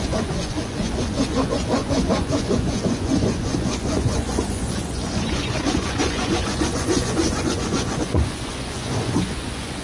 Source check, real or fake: fake